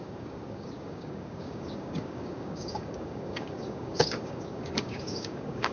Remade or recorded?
remade